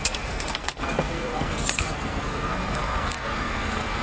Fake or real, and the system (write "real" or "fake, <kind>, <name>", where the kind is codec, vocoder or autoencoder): fake, codec, SNAC